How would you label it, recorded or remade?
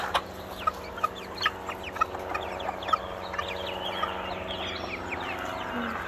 recorded